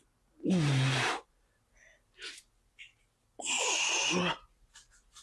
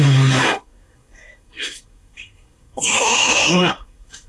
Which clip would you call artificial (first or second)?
second